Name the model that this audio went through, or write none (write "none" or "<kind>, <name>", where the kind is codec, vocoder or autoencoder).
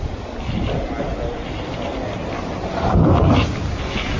none